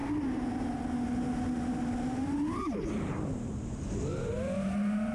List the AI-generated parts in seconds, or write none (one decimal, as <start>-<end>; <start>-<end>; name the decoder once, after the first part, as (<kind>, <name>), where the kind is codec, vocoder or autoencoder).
none